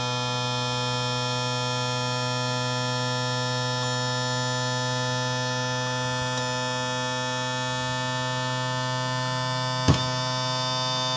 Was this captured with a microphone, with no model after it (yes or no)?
yes